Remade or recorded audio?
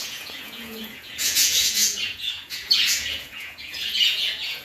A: remade